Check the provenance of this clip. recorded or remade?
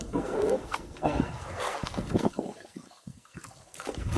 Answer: remade